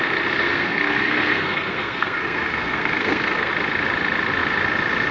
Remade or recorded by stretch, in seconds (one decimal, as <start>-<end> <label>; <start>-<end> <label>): 0.0-0.4 recorded; 0.4-3.5 remade; 3.5-5.1 recorded